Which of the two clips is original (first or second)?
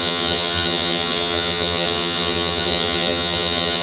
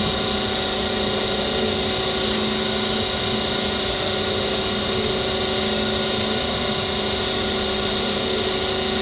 second